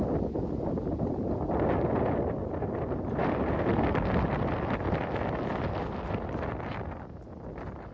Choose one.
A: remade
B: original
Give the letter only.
B